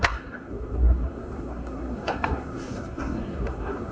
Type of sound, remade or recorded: remade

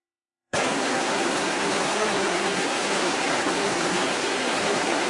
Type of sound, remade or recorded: remade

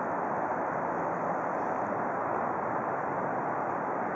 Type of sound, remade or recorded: recorded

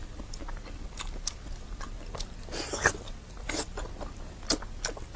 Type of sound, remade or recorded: recorded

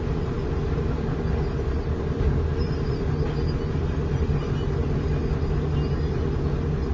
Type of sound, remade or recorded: recorded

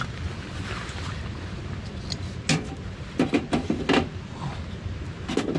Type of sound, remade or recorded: recorded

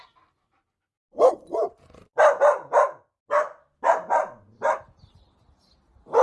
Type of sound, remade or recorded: recorded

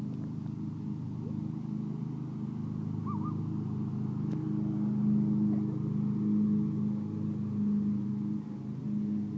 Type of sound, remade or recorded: recorded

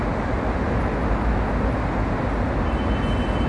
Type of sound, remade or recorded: recorded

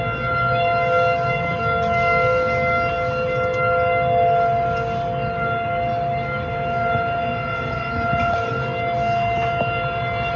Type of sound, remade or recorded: recorded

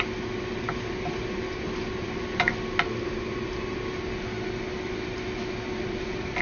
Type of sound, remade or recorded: recorded